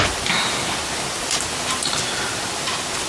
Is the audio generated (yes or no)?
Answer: no